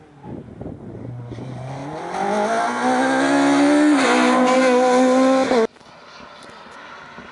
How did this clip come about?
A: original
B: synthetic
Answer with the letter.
A